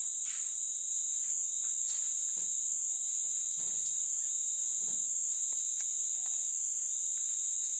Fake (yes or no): no